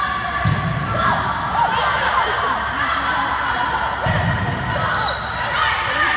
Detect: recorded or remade recorded